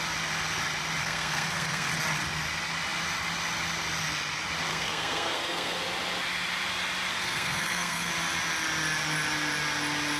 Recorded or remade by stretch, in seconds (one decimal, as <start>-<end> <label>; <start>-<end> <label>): 0.0-1.0 recorded; 1.0-1.9 remade; 1.9-4.7 recorded; 4.7-5.8 remade; 5.8-7.1 recorded; 7.1-8.1 remade; 8.1-10.2 recorded